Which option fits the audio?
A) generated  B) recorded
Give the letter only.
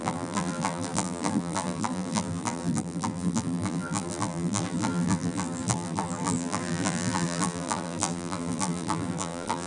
A